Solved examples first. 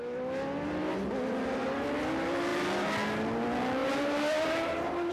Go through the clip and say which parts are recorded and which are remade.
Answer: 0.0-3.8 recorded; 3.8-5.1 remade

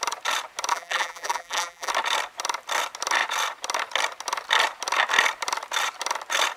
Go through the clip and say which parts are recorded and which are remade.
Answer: 0.0-0.7 recorded; 0.7-1.9 remade; 1.9-6.6 recorded